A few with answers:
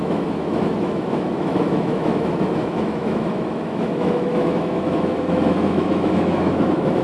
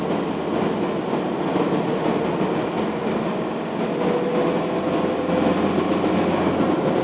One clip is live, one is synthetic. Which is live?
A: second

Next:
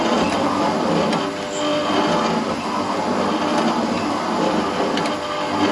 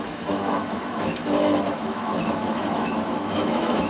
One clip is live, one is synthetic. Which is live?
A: first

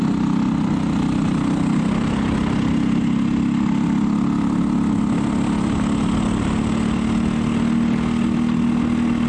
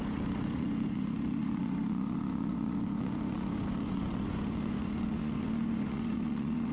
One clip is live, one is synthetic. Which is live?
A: first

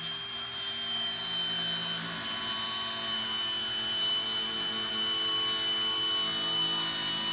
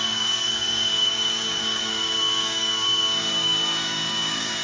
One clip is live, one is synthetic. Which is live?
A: first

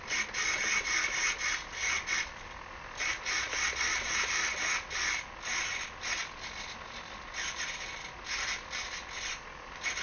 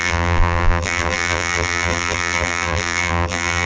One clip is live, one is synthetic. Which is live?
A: first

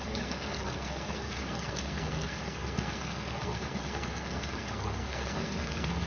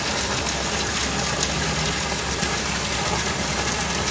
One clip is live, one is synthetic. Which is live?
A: second